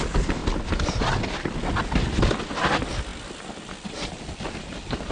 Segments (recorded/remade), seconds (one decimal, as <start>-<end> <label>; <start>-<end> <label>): 0.0-5.1 recorded